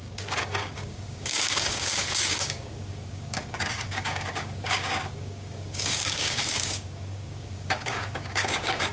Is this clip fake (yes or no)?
yes